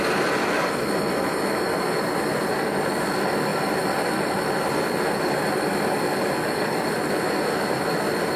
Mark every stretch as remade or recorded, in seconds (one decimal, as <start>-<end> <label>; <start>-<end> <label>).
0.0-3.5 recorded; 3.5-4.4 remade; 4.4-8.4 recorded

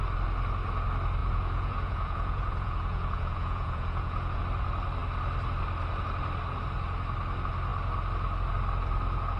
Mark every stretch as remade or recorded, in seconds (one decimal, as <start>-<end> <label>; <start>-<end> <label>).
0.0-1.2 recorded; 1.2-4.4 remade; 4.4-9.4 recorded

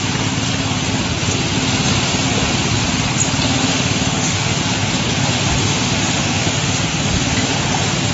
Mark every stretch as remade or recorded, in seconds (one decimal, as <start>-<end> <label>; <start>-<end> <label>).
0.0-3.6 recorded; 3.6-4.6 remade; 4.6-5.6 recorded; 5.6-6.8 remade; 6.8-8.1 recorded

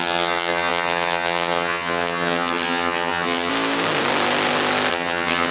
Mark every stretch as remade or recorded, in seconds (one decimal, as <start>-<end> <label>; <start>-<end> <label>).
0.0-3.5 remade; 3.5-4.9 recorded; 4.9-5.5 remade

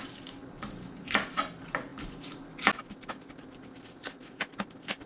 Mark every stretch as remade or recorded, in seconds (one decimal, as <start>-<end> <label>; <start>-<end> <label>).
0.0-5.1 recorded

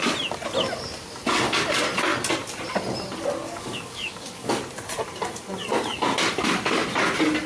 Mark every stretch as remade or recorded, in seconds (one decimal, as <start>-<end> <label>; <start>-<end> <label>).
0.0-3.4 recorded; 3.4-4.6 remade; 4.6-7.5 recorded

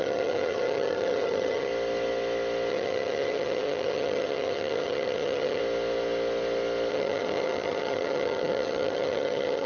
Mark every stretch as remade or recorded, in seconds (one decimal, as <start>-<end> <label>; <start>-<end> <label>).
0.0-1.7 remade; 1.7-2.7 recorded; 2.7-5.6 remade; 5.6-6.9 recorded; 6.9-9.7 remade

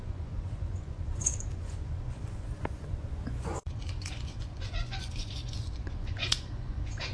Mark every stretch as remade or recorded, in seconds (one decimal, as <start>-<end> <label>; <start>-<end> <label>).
0.0-7.1 remade